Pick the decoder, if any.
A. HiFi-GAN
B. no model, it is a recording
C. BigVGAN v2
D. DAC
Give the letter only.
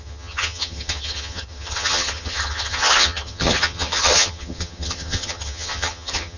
A